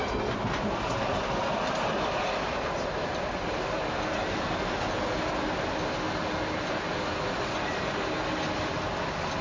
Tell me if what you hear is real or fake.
real